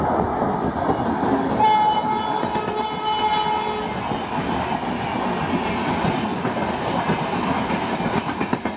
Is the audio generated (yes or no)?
no